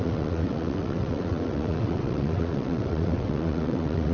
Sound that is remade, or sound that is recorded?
remade